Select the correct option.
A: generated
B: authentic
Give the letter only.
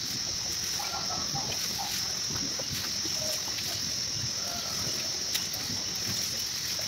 B